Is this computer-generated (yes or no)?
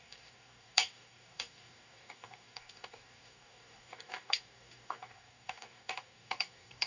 yes